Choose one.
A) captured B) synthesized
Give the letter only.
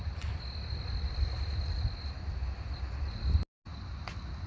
A